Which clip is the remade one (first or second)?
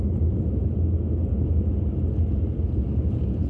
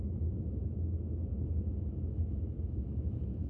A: second